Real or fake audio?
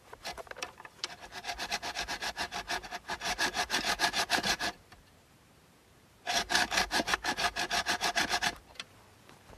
fake